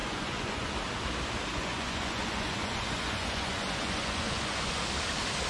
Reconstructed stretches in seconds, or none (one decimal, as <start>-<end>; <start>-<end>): 0.0-0.7; 1.5-4.8